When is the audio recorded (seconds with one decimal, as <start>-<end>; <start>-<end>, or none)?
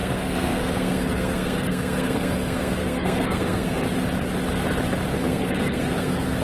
3.8-5.1